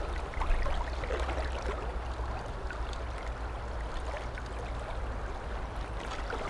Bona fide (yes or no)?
yes